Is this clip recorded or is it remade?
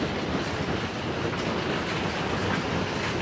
recorded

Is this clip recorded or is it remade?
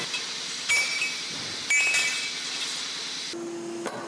recorded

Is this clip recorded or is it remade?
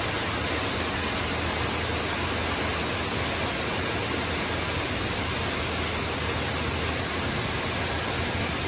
recorded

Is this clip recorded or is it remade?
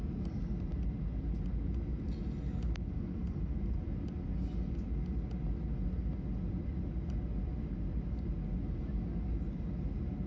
recorded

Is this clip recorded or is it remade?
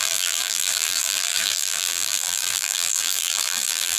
remade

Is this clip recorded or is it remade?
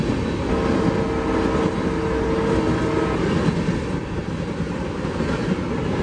recorded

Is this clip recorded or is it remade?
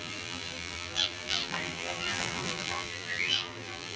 remade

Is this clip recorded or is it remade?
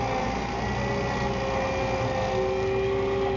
recorded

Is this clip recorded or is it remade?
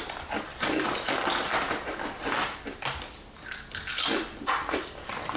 recorded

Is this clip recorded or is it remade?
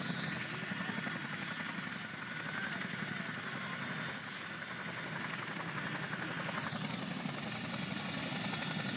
recorded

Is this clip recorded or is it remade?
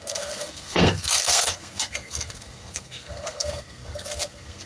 remade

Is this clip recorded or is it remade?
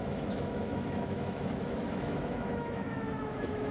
remade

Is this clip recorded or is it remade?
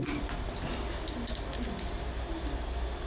recorded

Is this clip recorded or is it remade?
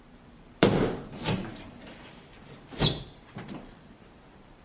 remade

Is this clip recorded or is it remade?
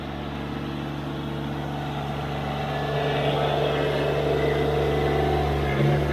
recorded